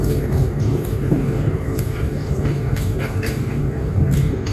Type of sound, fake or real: fake